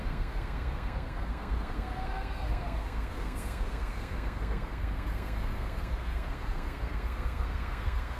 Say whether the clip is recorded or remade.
remade